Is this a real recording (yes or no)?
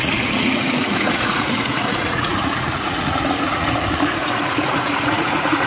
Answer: no